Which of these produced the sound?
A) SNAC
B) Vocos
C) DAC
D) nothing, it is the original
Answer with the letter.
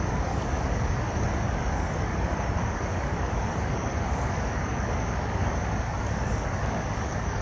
C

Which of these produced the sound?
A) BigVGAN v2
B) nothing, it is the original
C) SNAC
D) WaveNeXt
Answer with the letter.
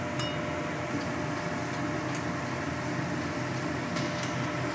B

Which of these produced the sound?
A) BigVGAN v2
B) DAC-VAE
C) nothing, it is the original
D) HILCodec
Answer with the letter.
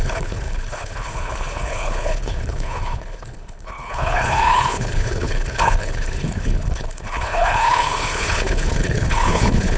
D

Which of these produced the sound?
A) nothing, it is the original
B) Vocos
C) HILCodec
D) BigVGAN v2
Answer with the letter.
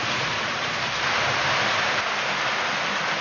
A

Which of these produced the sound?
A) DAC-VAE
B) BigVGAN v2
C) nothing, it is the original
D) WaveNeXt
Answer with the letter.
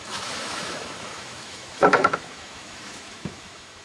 A